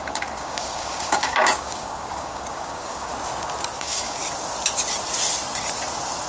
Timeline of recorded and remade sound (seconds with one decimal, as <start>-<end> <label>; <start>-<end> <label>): 0.0-3.1 remade; 3.1-3.8 recorded; 3.8-4.2 remade; 4.2-6.3 recorded